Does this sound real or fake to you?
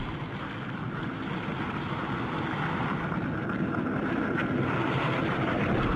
real